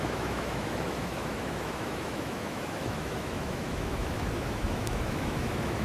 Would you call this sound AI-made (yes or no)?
yes